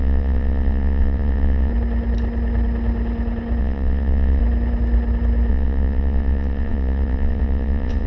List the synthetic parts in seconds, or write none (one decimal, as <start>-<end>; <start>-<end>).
0.0-1.7; 3.6-4.4; 5.5-8.1